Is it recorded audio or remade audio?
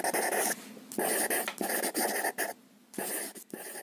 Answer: recorded